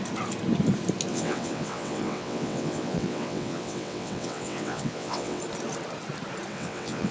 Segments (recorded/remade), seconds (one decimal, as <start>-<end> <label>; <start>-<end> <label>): 0.0-1.1 recorded; 1.1-5.4 remade; 5.4-6.5 recorded; 6.5-7.1 remade